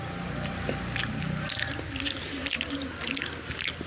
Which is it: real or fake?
real